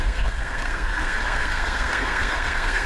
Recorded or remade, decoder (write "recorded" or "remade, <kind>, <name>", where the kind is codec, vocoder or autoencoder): remade, codec, SNAC